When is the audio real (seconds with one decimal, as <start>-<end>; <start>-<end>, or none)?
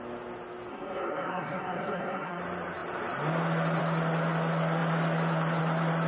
0.0-0.7; 2.4-6.1